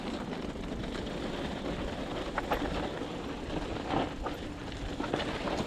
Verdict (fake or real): real